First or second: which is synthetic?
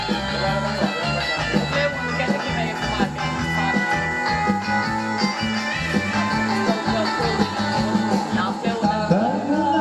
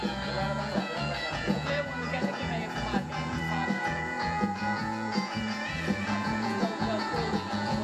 second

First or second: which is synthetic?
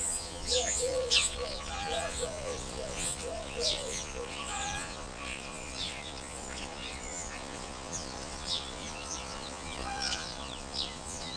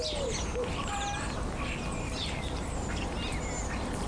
first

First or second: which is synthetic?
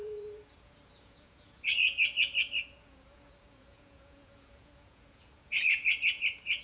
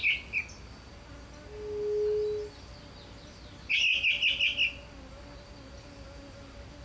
first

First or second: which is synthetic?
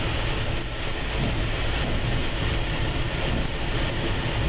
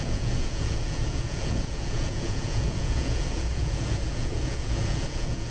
second